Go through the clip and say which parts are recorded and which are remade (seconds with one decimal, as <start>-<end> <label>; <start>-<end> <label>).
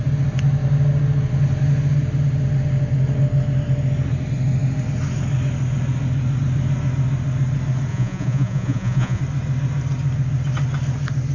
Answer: 0.0-7.9 recorded; 7.9-9.2 remade; 9.2-11.3 recorded